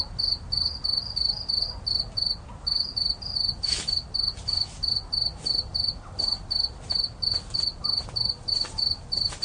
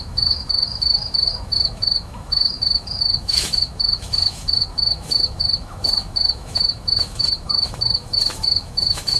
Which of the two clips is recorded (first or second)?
first